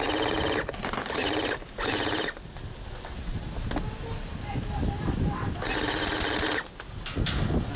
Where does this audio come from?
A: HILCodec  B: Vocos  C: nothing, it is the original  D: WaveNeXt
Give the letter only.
C